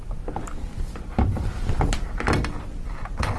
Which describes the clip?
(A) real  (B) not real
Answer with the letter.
A